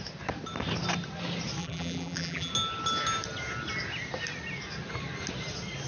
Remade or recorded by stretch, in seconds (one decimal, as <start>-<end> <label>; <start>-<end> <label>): 0.0-1.6 recorded; 1.6-2.5 remade; 2.5-5.9 recorded